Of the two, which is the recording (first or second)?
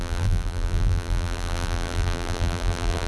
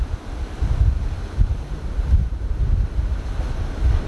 second